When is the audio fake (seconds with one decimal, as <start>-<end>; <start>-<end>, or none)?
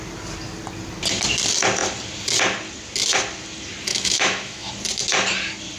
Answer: 3.9-4.7